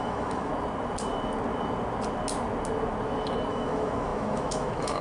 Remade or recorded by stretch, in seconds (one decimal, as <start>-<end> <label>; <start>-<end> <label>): 0.0-0.5 remade; 0.5-3.5 recorded; 3.5-5.0 remade